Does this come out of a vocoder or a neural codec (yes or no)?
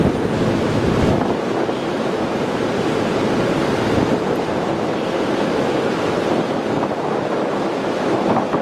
no